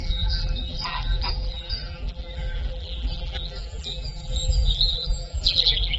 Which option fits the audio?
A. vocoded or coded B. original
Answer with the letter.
A